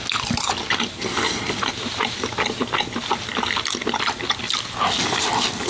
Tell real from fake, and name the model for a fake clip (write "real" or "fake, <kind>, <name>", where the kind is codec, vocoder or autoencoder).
real